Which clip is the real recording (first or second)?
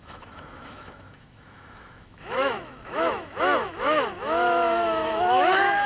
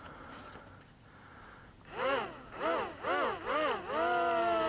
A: second